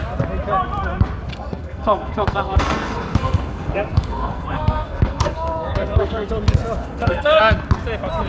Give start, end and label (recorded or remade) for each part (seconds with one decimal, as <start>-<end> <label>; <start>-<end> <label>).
0.0-1.3 recorded; 1.3-6.3 remade; 6.3-6.8 recorded; 6.8-7.4 remade; 7.4-8.3 recorded